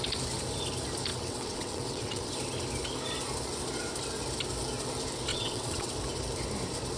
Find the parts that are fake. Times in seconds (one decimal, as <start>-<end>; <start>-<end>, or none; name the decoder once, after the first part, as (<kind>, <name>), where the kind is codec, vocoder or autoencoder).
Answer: 1.1-2.3 (vocoder, WaveNeXt); 5.3-5.9